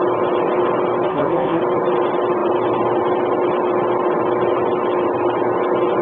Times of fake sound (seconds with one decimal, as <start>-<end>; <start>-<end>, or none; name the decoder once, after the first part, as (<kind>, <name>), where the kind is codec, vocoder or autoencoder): 1.1-1.6 (codec, SNAC)